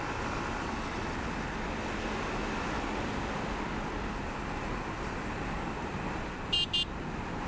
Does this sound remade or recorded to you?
recorded